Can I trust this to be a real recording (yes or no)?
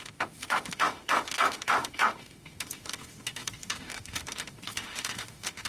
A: no